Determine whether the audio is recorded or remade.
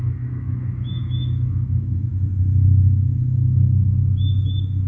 remade